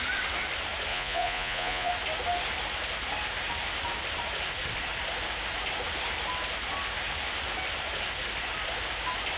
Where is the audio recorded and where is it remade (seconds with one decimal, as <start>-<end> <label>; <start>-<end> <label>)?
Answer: 0.0-0.9 recorded; 0.9-1.9 remade; 1.9-9.4 recorded